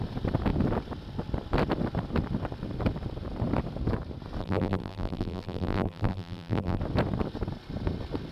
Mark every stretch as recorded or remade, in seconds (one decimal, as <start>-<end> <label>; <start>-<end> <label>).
0.0-4.4 recorded; 4.4-6.8 remade; 6.8-8.3 recorded